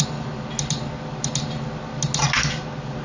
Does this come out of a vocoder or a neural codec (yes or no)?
no